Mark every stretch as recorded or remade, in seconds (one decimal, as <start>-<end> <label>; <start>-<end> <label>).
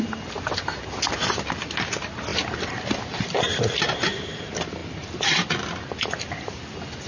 0.0-7.1 recorded